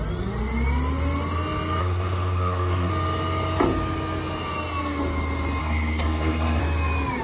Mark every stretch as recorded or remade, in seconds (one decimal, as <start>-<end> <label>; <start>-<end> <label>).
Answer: 0.0-1.8 recorded; 1.8-2.9 remade; 2.9-5.6 recorded; 5.6-6.6 remade; 6.6-7.2 recorded